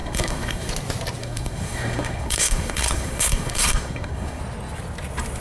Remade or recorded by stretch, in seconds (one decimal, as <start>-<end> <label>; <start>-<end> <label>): 0.0-0.7 remade; 0.7-1.2 recorded; 1.2-4.4 remade; 4.4-5.4 recorded